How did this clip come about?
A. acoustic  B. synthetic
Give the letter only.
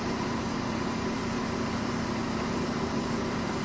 B